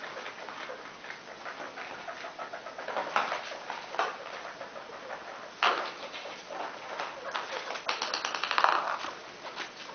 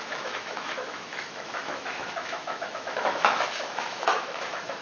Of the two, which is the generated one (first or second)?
second